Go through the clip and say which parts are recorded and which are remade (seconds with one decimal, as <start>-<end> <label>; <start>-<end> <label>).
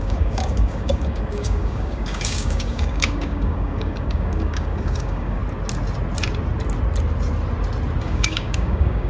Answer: 0.0-5.4 remade; 5.4-8.0 recorded; 8.0-9.1 remade